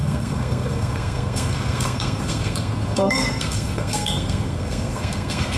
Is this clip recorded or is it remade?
remade